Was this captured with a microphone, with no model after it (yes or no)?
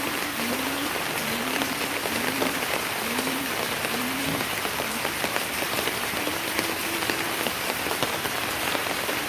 no